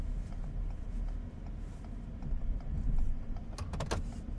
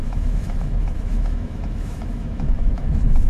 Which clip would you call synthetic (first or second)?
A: second